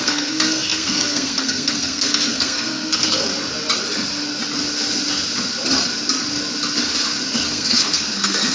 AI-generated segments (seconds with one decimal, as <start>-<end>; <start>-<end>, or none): 0.0-3.3; 7.5-8.5